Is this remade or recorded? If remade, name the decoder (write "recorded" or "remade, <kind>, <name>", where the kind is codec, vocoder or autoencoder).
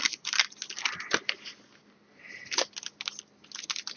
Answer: recorded